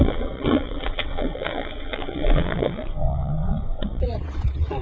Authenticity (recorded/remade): remade